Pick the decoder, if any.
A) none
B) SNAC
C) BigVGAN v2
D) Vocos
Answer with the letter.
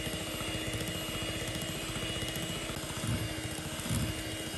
A